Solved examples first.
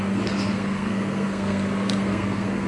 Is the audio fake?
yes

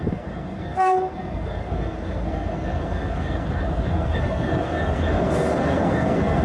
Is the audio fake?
yes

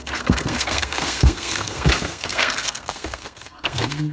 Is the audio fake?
yes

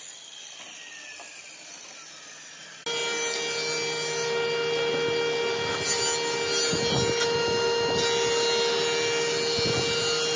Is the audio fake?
no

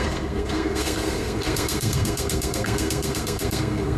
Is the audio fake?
yes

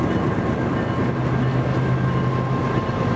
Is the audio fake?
no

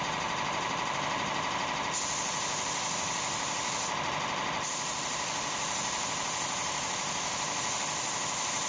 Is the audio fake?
no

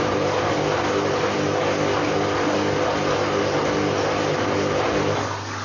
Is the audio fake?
no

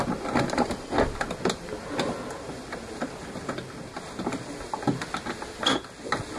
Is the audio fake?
no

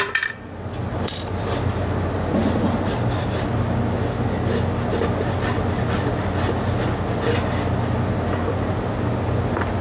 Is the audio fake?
no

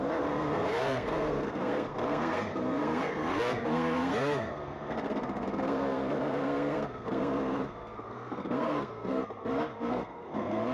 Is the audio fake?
yes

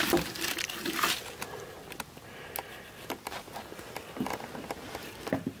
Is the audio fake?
no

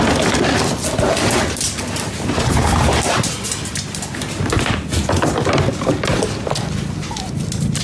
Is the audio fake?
no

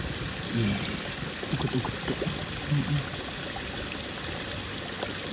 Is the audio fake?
no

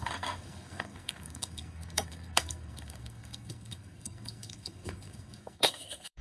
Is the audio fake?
yes